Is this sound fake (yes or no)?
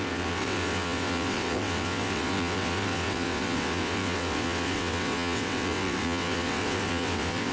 yes